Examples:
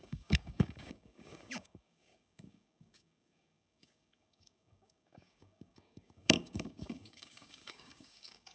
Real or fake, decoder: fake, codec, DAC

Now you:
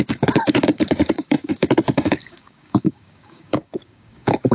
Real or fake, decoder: fake, codec, DAC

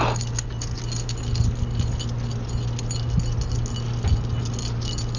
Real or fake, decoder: real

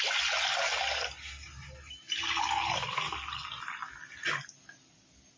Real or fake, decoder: real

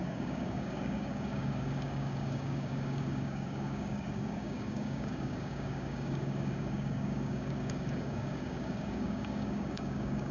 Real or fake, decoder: fake, codec, DAC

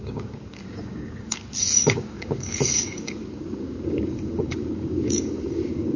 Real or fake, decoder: fake, codec, DAC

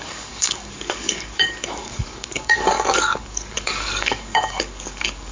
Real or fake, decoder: fake, codec, DAC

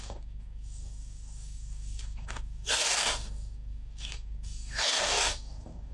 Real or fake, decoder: fake, codec, DAC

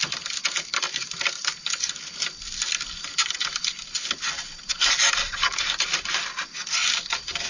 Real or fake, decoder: real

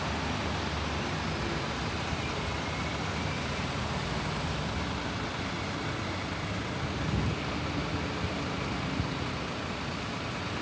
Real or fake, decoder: real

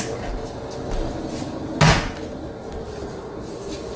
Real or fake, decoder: real